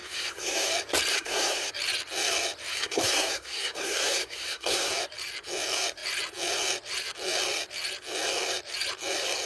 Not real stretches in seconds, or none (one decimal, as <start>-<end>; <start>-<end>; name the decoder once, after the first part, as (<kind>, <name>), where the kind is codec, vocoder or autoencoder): 0.0-0.7 (codec, SNAC); 1.1-1.7; 2.7-4.9